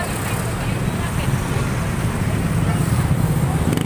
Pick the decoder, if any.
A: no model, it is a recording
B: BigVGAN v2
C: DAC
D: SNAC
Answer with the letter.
A